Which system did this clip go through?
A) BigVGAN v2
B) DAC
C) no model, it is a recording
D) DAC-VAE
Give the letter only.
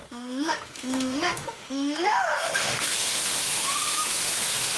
D